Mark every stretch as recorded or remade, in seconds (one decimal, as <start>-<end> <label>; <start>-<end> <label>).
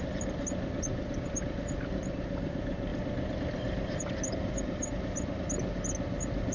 0.0-6.5 recorded